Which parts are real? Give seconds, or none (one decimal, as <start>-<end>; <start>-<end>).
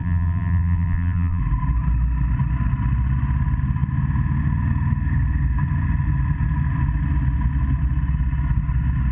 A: 1.4-9.1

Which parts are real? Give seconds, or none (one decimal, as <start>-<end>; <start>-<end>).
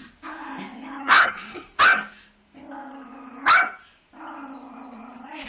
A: 0.0-1.0; 1.8-5.5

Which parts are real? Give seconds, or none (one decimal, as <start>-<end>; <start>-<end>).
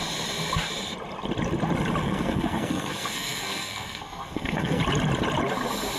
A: 0.0-2.0; 4.8-6.0